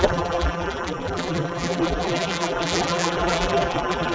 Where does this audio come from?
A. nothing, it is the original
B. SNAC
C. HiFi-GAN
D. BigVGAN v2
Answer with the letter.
D